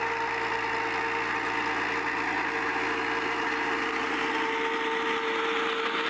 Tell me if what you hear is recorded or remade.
recorded